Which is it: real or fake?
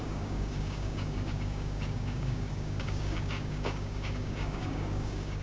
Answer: fake